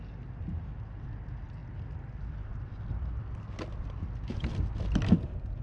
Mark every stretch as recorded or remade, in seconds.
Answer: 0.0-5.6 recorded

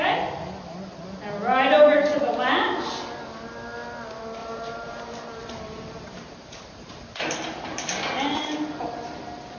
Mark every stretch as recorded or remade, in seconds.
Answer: 0.0-4.4 recorded; 4.4-7.2 remade; 7.2-9.6 recorded

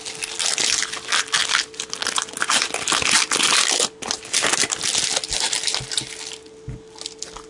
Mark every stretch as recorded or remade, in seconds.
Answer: 0.0-7.5 recorded

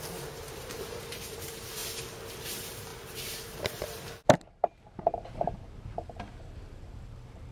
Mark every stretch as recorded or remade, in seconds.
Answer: 0.0-1.8 remade; 1.8-2.5 recorded; 2.5-7.5 remade

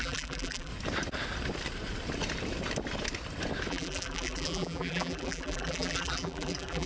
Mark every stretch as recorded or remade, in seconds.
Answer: 0.0-0.7 remade; 0.7-3.7 recorded; 3.7-6.9 remade

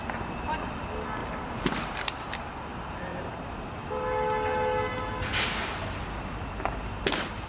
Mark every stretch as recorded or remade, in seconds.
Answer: 0.0-1.2 recorded; 1.2-2.5 remade; 2.5-3.1 recorded; 3.1-3.7 remade; 3.7-7.5 recorded

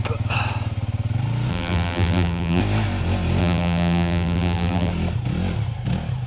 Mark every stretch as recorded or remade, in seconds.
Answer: 0.0-1.5 recorded; 1.5-2.6 remade; 2.6-3.4 recorded; 3.4-4.9 remade; 4.9-6.3 recorded